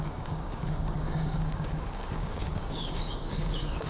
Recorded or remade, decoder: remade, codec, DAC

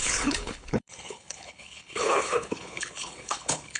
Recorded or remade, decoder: remade, codec, HILCodec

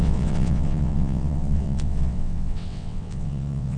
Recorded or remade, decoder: remade, vocoder, WaveNeXt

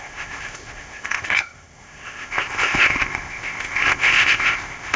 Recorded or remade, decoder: remade, codec, ZipCodec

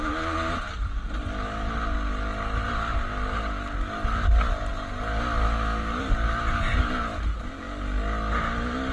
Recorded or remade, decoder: recorded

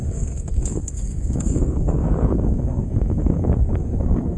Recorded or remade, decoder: remade, codec, SNAC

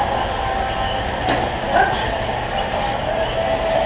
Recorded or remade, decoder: recorded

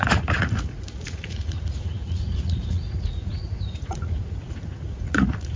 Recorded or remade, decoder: remade, vocoder, Vocos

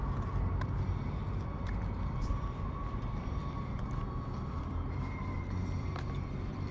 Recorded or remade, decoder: remade, vocoder, BigVGAN v2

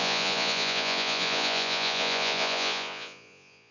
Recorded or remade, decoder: remade, vocoder, Vocos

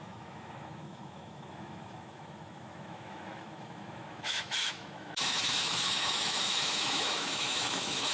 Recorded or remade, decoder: remade, autoencoder, DAC-VAE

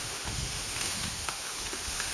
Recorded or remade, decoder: remade, autoencoder, DAC-VAE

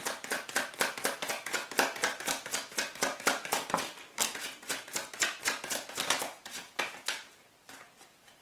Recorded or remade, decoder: recorded